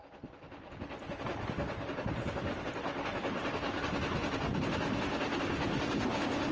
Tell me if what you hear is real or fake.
real